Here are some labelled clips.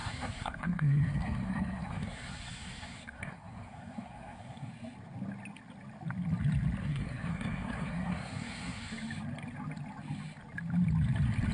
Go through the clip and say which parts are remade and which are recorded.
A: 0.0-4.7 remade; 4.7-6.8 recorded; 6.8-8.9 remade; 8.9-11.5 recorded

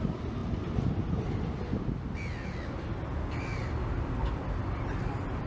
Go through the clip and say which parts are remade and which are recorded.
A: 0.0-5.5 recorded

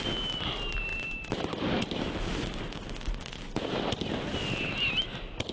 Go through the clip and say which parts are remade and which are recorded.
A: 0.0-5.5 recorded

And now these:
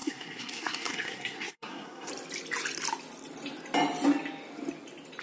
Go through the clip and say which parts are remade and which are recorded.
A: 0.0-2.1 remade; 2.1-5.2 recorded

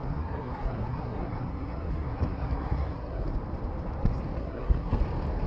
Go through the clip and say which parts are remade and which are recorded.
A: 0.0-3.3 remade; 3.3-4.4 recorded; 4.4-5.0 remade; 5.0-5.5 recorded